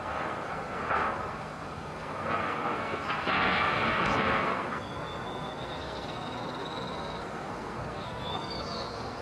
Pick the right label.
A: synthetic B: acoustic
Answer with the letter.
A